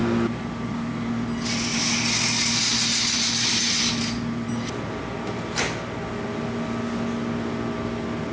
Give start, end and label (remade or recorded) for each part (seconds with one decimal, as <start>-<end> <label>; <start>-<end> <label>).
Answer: 0.0-8.3 recorded